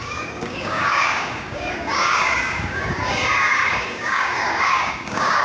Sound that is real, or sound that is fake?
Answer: fake